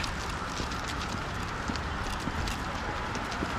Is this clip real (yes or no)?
yes